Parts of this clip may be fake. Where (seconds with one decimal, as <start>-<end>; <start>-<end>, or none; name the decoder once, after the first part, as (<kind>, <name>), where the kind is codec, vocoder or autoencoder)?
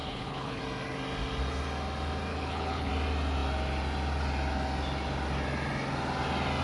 0.0-0.6 (codec, HILCodec); 2.3-2.9